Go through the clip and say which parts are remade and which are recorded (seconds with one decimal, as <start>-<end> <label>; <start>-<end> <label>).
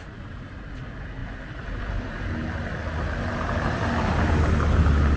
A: 0.0-5.2 recorded